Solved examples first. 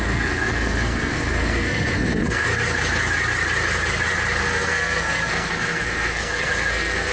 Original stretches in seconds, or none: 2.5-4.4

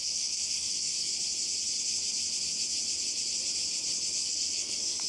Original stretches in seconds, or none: 1.1-4.2